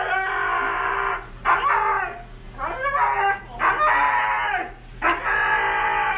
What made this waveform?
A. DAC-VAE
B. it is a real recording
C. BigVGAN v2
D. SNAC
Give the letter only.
B